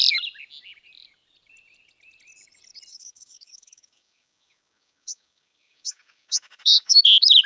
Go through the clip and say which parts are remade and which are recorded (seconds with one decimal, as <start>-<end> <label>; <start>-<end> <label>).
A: 0.0-2.9 recorded; 2.9-7.0 remade; 7.0-7.5 recorded